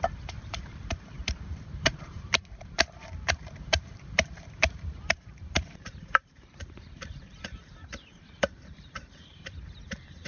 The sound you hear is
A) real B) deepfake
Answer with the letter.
B